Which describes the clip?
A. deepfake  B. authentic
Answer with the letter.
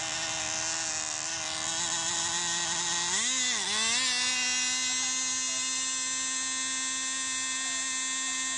B